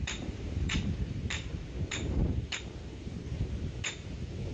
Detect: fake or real fake